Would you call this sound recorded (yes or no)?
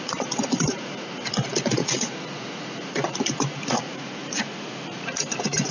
no